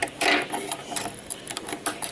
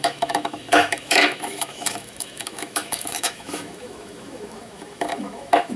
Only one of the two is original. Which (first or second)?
first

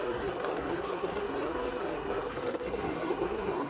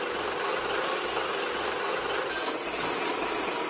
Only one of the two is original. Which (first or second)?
second